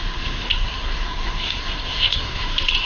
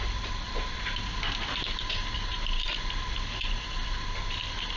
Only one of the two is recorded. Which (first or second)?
second